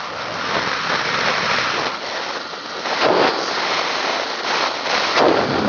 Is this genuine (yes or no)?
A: yes